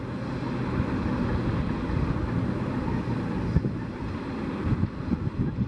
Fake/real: real